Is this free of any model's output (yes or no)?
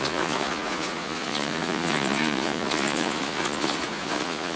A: no